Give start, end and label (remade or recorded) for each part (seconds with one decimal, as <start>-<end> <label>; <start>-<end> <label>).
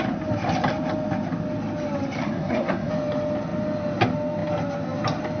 0.0-2.2 recorded; 2.2-2.9 remade; 2.9-5.4 recorded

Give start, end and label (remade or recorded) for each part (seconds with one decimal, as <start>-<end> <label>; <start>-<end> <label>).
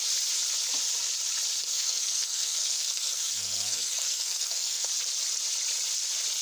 0.0-1.7 recorded; 1.7-4.9 remade; 4.9-6.4 recorded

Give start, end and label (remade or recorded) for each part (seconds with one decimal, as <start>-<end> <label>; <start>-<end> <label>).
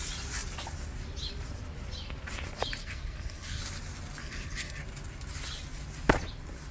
0.0-2.8 recorded; 2.8-3.6 remade; 3.6-4.2 recorded; 4.2-4.8 remade; 4.8-6.7 recorded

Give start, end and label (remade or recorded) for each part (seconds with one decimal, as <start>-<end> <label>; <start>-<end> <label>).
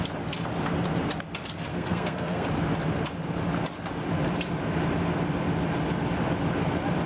0.0-1.7 recorded; 1.7-2.5 remade; 2.5-7.1 recorded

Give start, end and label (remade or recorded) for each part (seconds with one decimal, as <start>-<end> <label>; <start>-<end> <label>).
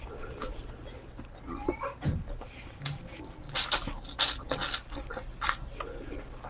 0.0-6.5 recorded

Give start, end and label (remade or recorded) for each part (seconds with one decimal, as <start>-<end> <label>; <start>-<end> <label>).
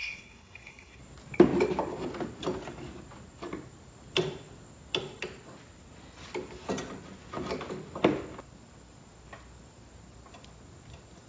0.0-1.0 remade; 1.0-11.3 recorded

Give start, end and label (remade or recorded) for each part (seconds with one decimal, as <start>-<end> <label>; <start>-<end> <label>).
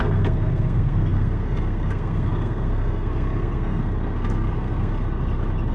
0.0-4.9 remade; 4.9-5.7 recorded